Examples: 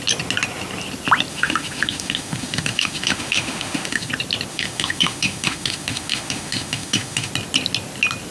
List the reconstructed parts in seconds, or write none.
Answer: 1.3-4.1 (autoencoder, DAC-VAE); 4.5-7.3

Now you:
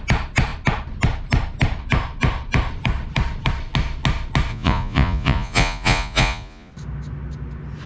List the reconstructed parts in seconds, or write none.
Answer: 4.5-6.7 (vocoder, Vocos)

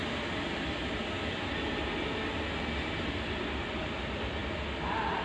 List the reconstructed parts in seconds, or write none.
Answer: none

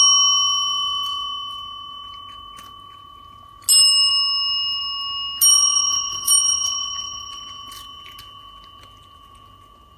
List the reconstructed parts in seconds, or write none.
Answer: 5.5-7.4 (vocoder, Vocos)

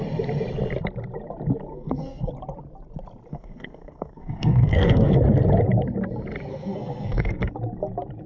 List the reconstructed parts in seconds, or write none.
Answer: 1.7-2.3 (codec, SNAC); 3.3-5.2; 6.5-7.5